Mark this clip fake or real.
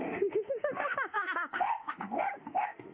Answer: fake